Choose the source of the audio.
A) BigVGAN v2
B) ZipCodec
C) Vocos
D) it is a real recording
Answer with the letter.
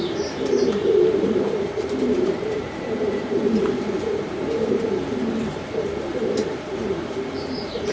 A